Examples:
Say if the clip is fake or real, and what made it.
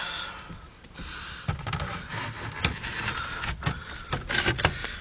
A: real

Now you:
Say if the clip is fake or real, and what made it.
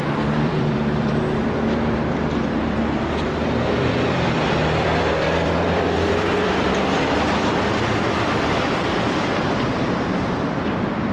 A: fake, vocoder, BigVGAN v2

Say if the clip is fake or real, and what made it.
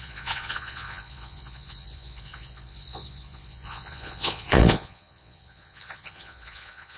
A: fake, vocoder, Vocos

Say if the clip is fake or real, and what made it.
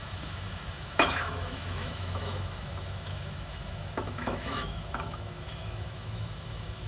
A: fake, autoencoder, DAC-VAE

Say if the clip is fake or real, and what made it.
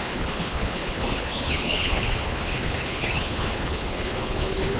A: fake, codec, HILCodec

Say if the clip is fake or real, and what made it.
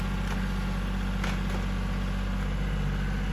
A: real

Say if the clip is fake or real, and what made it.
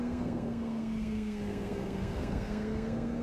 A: fake, codec, SNAC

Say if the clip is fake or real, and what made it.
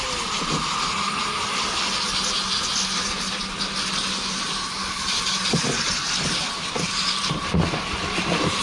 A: real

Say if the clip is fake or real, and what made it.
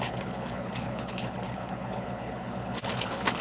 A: fake, codec, HILCodec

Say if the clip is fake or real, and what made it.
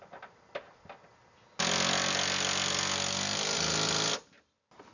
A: real